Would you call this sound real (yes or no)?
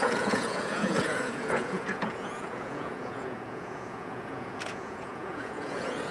no